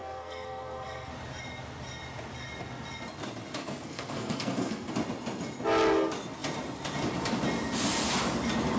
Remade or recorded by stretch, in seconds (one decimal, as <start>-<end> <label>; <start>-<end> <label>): 0.0-1.1 remade; 1.1-3.6 recorded; 3.6-4.9 remade; 4.9-8.8 recorded